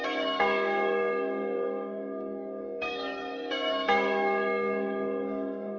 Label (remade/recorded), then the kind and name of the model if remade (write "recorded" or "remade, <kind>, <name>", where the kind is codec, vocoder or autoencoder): remade, codec, DAC